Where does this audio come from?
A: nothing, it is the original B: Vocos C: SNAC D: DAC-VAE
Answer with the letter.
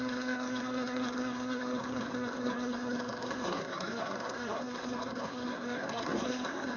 C